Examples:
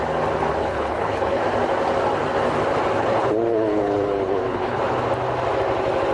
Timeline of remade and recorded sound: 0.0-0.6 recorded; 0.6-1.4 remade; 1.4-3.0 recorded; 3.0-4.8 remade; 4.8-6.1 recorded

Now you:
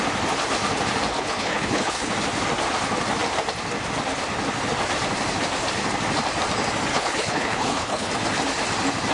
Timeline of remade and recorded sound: 0.0-1.1 recorded; 1.1-2.1 remade; 2.1-6.9 recorded; 6.9-8.1 remade; 8.1-9.1 recorded

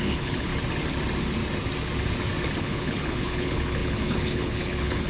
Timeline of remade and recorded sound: 0.0-0.5 remade; 0.5-2.6 recorded; 2.6-5.1 remade

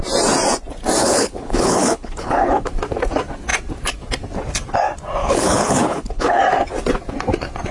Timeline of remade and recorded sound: 0.0-1.0 recorded; 1.0-2.7 remade; 2.7-5.2 recorded; 5.2-6.4 remade; 6.4-7.7 recorded